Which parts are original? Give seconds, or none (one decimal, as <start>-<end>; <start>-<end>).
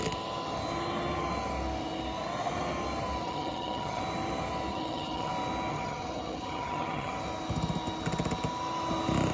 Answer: 0.0-3.2; 4.0-4.7; 5.3-5.7; 7.1-9.3